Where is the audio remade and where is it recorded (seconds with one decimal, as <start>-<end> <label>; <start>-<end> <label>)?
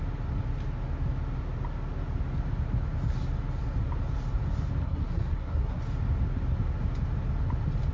0.0-4.8 recorded; 4.8-5.8 remade; 5.8-7.9 recorded